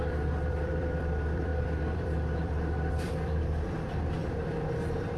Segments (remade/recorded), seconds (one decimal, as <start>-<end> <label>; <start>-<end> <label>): 0.0-5.2 remade